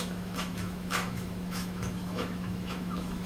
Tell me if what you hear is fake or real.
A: fake